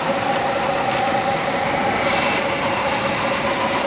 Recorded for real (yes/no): yes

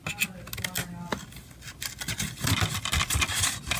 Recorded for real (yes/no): yes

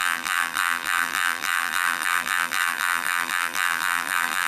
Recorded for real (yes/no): no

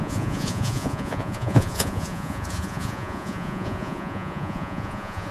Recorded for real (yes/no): no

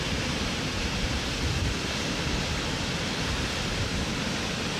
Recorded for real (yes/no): yes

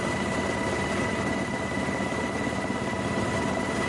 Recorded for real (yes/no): yes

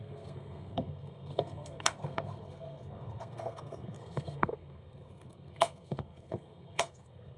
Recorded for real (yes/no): no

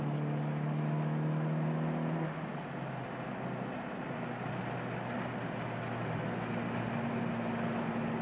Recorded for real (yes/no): yes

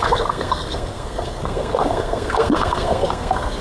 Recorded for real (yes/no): no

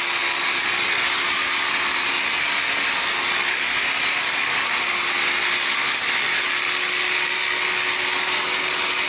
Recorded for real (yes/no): yes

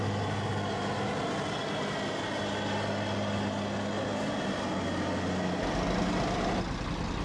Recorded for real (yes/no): yes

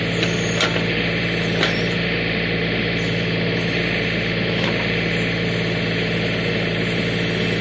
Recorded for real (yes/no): yes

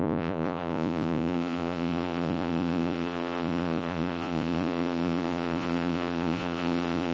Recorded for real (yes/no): no